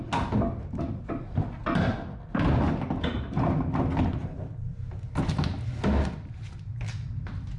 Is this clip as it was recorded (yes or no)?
yes